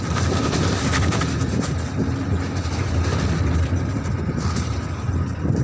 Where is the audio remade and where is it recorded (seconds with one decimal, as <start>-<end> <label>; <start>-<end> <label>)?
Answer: 0.0-5.6 recorded